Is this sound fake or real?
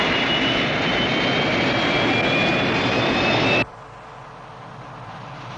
real